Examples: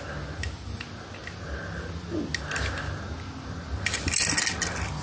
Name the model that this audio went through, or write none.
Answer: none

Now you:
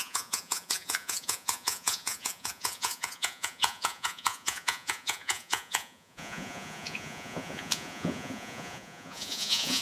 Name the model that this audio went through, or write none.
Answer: vocoder, Vocos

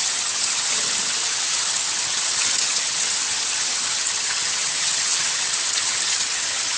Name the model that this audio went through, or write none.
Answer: vocoder, HiFi-GAN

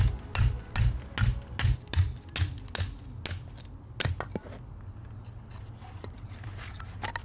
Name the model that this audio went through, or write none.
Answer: none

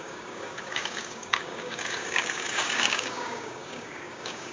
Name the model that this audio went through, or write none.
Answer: codec, DAC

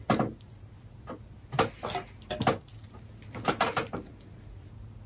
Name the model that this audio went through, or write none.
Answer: none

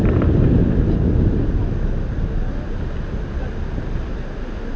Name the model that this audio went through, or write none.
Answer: none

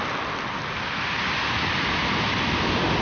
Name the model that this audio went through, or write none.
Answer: none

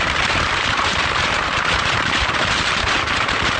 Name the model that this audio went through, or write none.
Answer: vocoder, BigVGAN v2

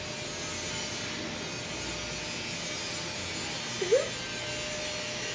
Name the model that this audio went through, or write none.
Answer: none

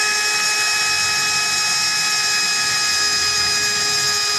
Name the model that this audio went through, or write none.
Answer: none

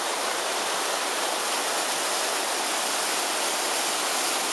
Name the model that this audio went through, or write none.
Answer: none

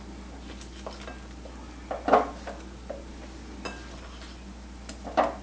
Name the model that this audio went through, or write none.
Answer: none